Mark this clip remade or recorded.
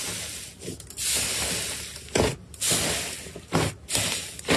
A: recorded